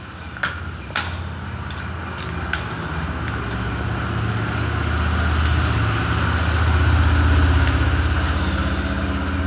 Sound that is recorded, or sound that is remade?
recorded